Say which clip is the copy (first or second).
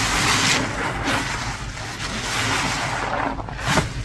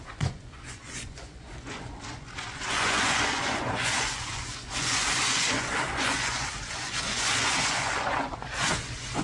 second